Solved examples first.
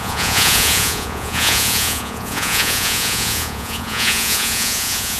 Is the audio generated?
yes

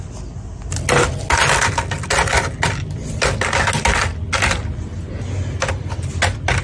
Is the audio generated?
no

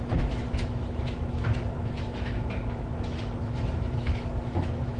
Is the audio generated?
yes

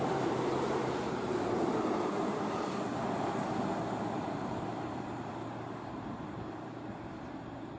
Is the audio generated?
yes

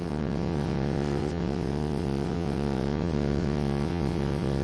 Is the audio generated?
yes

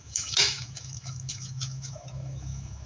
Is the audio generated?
yes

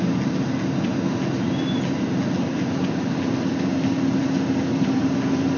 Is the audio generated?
no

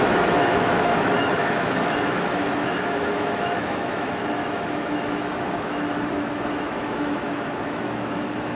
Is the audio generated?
yes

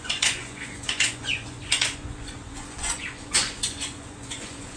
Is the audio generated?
yes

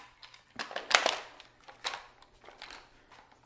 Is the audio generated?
no